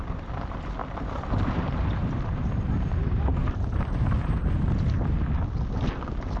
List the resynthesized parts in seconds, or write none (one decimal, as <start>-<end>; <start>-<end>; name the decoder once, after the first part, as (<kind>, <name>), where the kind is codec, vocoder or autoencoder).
0.8-4.6 (vocoder, BigVGAN v2)